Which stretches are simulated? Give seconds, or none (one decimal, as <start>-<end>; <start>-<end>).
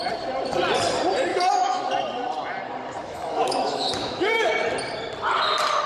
1.3-1.8; 3.0-4.5